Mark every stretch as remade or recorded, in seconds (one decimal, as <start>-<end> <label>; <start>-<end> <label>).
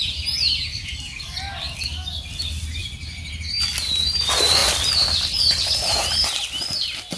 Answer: 0.0-7.2 recorded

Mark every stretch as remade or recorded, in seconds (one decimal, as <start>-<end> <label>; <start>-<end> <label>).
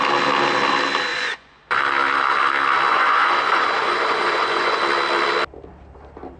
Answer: 0.0-1.1 recorded; 1.1-1.6 remade; 1.6-2.9 recorded; 2.9-4.8 remade; 4.8-6.4 recorded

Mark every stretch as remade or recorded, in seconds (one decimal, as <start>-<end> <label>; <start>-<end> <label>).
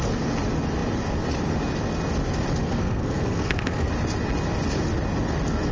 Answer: 0.0-2.6 recorded; 2.6-3.9 remade; 3.9-5.7 recorded